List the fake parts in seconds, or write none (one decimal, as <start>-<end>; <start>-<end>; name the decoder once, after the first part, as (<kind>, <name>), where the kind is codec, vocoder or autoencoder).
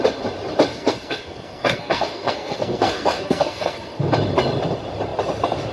0.7-4.1 (codec, SNAC)